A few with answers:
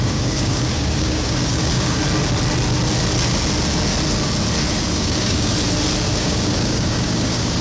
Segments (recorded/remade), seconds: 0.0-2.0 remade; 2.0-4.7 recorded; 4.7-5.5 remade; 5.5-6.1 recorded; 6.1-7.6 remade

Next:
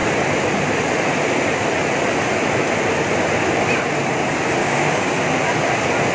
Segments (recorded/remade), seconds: 0.0-4.6 recorded; 4.6-5.1 remade; 5.1-6.1 recorded

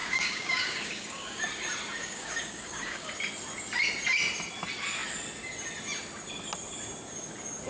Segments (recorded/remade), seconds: 0.0-1.4 remade; 1.4-2.0 recorded; 2.0-3.1 remade; 3.1-7.7 recorded

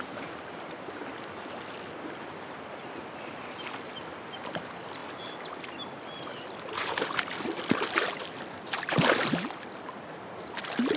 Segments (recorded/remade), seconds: 0.0-11.0 recorded

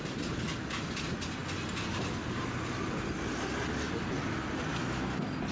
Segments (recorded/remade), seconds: 0.0-5.5 recorded

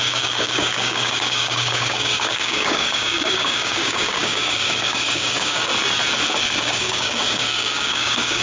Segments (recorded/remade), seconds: 0.0-5.7 remade; 5.7-6.6 recorded; 6.6-8.4 remade

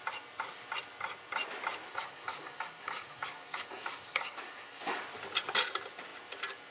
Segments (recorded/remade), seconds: 0.0-1.9 recorded; 1.9-5.0 remade; 5.0-6.7 recorded

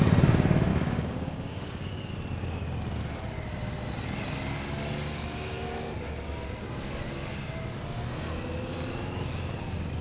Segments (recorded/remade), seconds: 0.0-0.7 recorded; 0.7-2.1 remade; 2.1-10.0 recorded